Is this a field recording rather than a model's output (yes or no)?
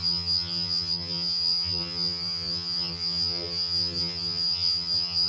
no